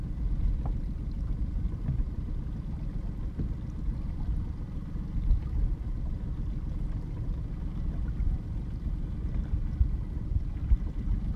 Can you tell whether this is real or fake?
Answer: real